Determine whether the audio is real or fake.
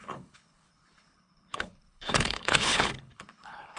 fake